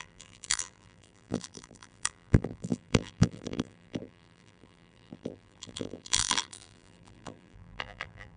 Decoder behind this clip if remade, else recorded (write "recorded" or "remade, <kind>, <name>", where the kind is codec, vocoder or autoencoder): remade, vocoder, BigVGAN v2